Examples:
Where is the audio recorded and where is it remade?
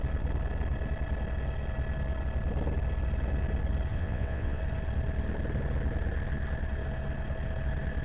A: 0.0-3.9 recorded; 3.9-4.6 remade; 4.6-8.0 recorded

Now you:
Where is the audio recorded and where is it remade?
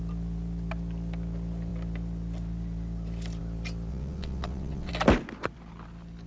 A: 0.0-3.9 recorded; 3.9-4.9 remade; 4.9-6.3 recorded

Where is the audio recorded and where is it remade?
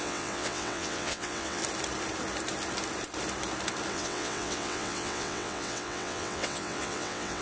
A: 0.0-1.6 remade; 1.6-3.9 recorded; 3.9-7.4 remade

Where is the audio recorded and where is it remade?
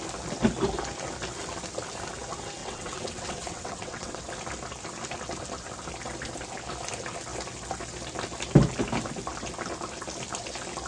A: 0.0-2.6 recorded; 2.6-4.2 remade; 4.2-10.9 recorded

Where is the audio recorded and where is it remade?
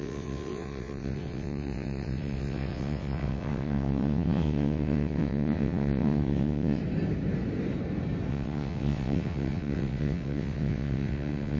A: 0.0-6.8 remade; 6.8-8.3 recorded; 8.3-11.6 remade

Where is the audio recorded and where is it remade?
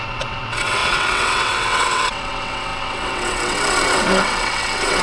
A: 0.0-5.0 remade